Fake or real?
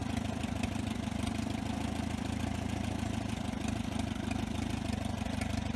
real